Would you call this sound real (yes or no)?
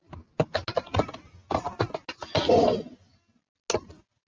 yes